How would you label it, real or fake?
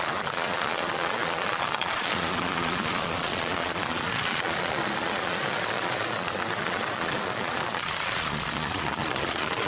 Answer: fake